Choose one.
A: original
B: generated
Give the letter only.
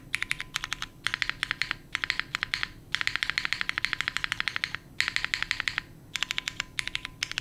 A